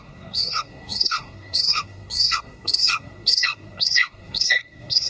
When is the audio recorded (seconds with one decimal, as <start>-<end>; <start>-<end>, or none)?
none